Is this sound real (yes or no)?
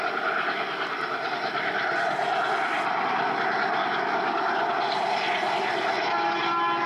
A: yes